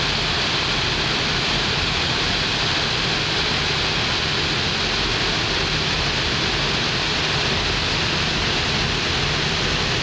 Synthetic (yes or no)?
no